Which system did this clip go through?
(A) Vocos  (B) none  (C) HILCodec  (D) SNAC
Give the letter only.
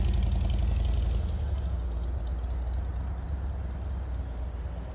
B